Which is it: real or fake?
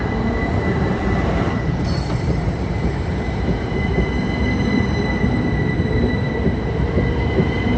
fake